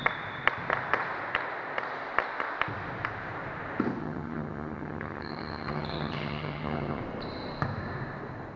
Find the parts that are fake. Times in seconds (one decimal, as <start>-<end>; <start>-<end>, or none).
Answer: 4.0-7.0